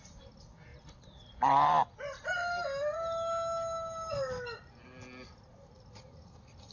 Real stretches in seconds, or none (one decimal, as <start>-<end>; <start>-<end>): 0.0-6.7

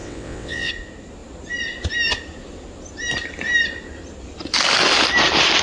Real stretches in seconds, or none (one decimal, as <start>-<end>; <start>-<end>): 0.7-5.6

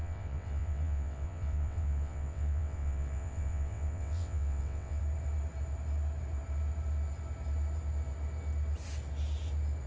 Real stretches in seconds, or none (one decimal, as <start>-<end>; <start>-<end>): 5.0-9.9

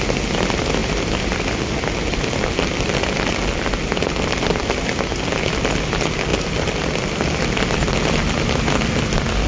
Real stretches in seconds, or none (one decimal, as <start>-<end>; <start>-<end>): 0.0-9.5

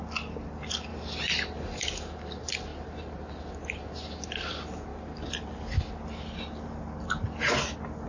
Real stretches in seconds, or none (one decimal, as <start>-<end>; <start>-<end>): 0.0-8.1

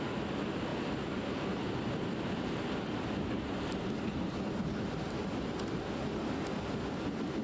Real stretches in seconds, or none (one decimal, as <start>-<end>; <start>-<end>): 0.0-7.4

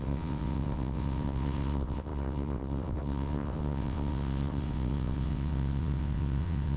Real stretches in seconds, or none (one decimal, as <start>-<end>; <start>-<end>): none